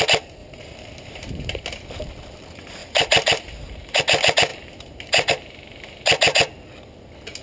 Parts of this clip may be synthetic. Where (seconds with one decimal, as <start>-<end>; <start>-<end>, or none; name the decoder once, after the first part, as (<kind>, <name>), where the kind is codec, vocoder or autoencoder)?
0.4-1.3 (vocoder, BigVGAN v2); 2.8-4.0; 4.5-5.3

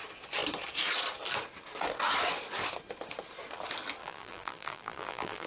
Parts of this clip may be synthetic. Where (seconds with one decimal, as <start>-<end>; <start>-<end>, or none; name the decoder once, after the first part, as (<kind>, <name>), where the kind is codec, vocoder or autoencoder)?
4.0-5.5 (vocoder, BigVGAN v2)